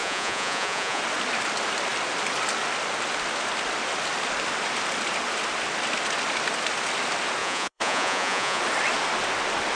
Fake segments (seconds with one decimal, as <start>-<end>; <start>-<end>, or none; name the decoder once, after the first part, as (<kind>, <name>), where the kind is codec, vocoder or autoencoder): 0.0-1.0 (vocoder, Vocos); 7.4-8.6